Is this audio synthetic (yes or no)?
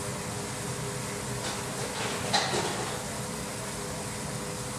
no